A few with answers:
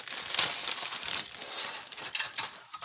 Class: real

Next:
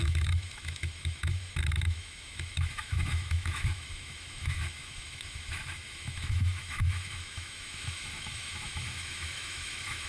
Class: fake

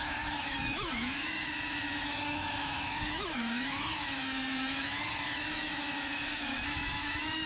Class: fake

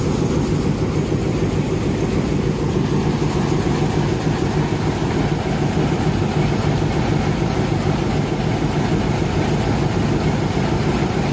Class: real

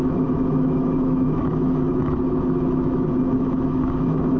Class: fake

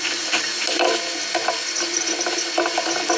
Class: real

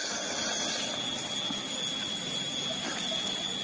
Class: real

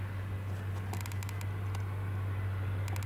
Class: real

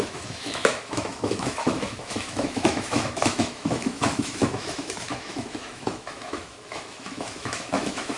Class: fake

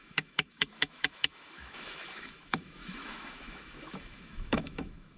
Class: fake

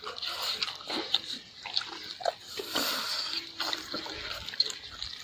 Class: real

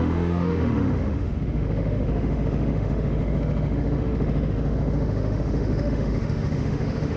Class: fake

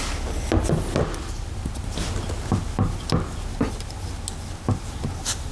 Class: real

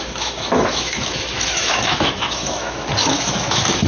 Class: fake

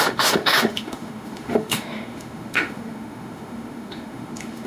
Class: fake